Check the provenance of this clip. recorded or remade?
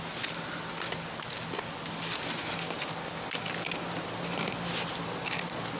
recorded